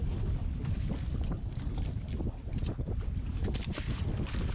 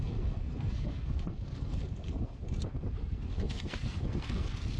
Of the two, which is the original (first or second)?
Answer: first